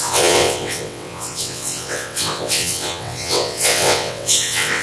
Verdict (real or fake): fake